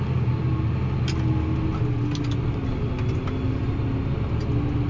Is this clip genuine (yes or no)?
yes